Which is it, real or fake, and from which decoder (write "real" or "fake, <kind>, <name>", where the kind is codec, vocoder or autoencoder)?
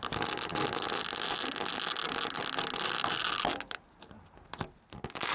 real